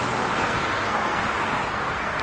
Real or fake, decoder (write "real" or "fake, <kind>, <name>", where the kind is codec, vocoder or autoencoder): fake, codec, SNAC